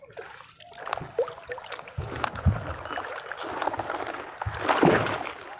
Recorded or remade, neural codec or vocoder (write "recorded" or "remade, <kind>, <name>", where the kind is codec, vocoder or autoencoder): recorded